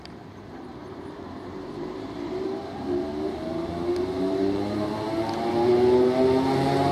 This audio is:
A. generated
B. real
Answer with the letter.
A